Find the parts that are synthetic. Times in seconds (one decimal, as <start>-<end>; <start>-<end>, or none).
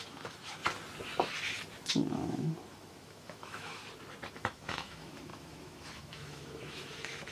0.0-0.6; 1.9-3.8; 4.3-7.3